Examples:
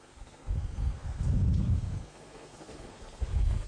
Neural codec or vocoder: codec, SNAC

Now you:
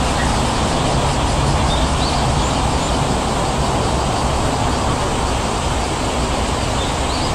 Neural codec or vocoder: none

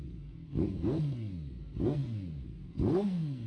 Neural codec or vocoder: codec, SNAC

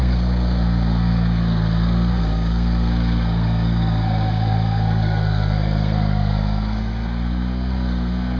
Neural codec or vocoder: codec, SNAC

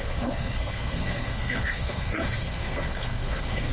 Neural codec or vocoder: codec, SNAC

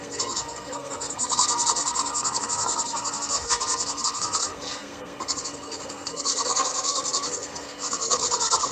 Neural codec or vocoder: codec, SNAC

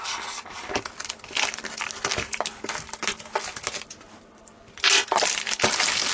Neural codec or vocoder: none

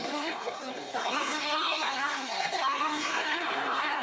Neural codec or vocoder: codec, SNAC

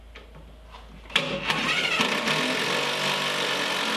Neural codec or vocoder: none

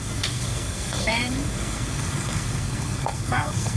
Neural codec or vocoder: codec, SNAC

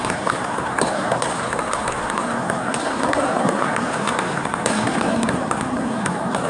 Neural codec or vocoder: codec, SNAC